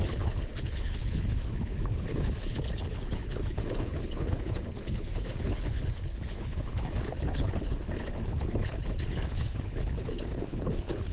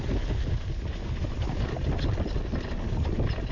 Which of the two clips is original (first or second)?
second